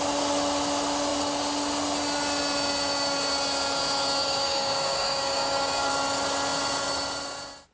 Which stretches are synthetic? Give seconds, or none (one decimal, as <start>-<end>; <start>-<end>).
4.2-5.9